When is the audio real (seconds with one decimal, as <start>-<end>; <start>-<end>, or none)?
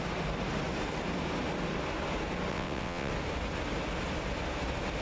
0.0-2.5; 3.1-5.0